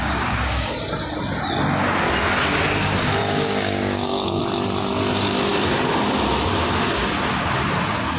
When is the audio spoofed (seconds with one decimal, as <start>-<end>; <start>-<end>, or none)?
0.0-0.7; 3.2-4.4